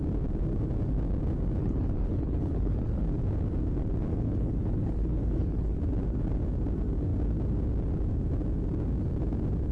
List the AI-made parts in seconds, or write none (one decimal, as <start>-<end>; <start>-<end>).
1.6-3.0; 4.1-5.8